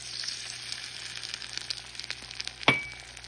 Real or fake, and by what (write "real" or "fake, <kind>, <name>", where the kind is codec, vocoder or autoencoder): real